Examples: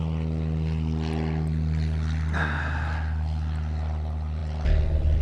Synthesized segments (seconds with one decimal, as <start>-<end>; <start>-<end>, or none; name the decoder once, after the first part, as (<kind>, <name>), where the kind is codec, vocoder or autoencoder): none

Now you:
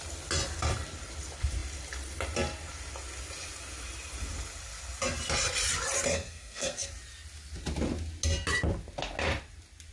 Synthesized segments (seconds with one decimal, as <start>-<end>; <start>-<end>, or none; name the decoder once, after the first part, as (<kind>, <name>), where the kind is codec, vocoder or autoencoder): 6.1-6.9 (codec, SNAC)

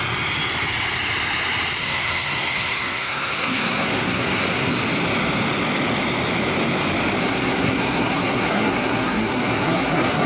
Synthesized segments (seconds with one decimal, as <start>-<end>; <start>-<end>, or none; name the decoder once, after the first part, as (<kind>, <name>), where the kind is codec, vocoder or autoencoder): 1.8-4.7 (codec, SNAC); 7.2-10.3

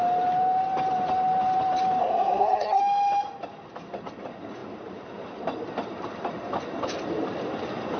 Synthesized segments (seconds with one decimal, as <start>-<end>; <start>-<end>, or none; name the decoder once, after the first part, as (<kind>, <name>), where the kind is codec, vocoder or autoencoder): 2.0-2.8 (codec, SNAC)